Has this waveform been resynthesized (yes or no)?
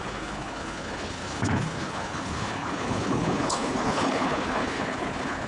yes